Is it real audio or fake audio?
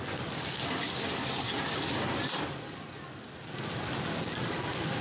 real